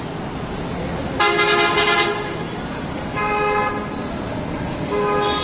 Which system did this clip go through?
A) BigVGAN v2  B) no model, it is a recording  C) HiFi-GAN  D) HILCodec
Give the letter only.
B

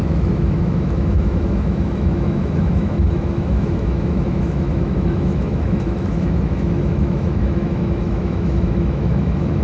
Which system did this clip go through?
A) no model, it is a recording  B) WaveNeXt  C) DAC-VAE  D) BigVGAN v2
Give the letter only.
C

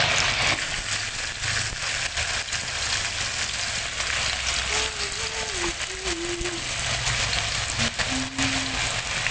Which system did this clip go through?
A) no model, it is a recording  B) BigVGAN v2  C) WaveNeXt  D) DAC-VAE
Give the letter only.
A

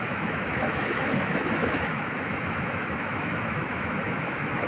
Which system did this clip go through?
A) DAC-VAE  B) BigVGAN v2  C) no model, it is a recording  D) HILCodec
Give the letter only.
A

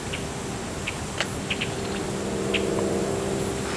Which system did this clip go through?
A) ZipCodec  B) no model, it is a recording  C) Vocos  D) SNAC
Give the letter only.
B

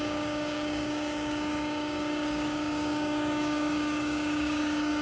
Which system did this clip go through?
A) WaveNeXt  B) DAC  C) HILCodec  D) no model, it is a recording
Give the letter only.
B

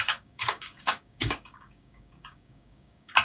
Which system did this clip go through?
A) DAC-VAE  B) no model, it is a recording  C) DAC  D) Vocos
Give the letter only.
C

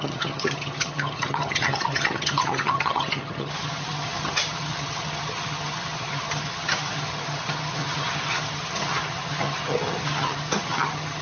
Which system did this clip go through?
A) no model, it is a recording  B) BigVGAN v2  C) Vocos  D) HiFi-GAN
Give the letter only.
D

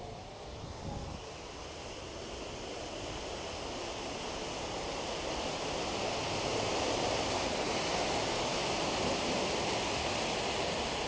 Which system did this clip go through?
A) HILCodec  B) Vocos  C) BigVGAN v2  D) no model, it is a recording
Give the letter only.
D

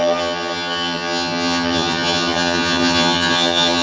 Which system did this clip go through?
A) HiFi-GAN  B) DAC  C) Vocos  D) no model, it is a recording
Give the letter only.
A